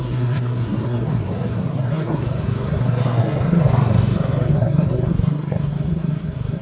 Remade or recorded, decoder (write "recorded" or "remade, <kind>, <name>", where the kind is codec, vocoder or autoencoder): remade, codec, SNAC